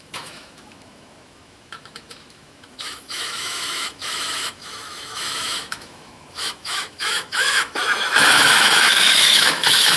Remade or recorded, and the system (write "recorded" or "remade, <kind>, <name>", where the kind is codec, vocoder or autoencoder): remade, autoencoder, DAC-VAE